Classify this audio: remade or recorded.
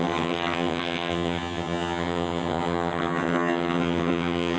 remade